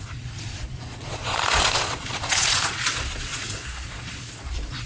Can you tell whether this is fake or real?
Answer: fake